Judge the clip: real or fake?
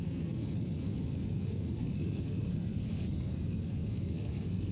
fake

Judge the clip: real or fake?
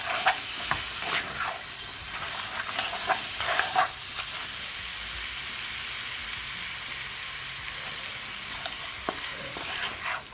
real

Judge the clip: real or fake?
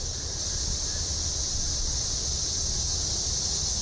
real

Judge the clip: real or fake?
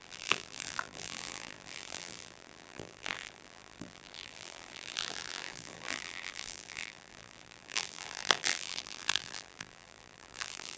fake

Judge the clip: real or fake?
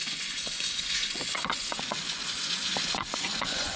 fake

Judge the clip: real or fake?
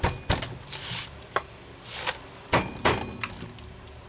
real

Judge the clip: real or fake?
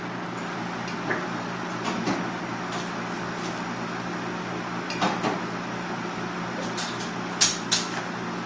real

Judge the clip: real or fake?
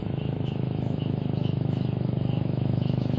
fake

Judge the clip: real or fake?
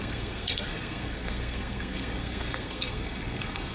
fake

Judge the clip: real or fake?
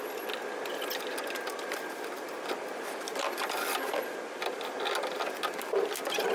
real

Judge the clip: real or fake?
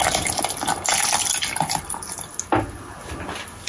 real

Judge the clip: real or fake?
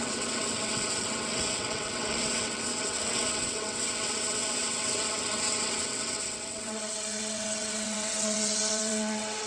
fake